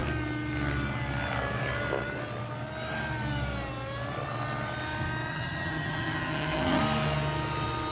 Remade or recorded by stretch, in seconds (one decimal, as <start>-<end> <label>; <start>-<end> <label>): 0.0-5.3 recorded; 5.3-6.8 remade; 6.8-7.9 recorded